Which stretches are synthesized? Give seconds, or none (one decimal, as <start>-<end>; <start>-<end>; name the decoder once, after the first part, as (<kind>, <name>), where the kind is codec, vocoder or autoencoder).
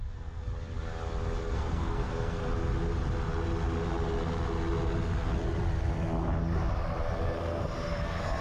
0.0-0.5 (codec, SNAC); 1.4-2.4; 7.4-8.4